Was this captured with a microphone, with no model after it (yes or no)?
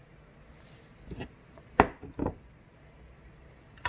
yes